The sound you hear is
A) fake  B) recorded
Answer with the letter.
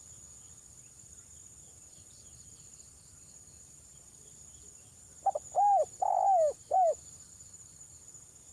B